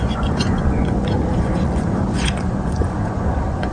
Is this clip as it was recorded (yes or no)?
no